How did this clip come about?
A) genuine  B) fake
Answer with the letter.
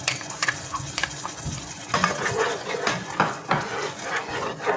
B